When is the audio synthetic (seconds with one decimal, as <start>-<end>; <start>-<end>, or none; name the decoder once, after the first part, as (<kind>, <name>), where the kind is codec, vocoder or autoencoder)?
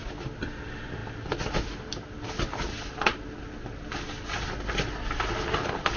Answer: none